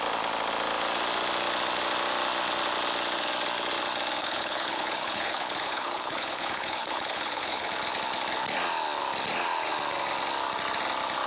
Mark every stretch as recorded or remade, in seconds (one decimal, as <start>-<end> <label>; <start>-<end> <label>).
0.0-4.2 recorded; 4.2-7.7 remade; 7.7-11.3 recorded